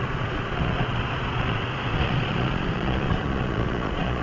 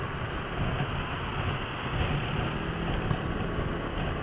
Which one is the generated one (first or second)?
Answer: first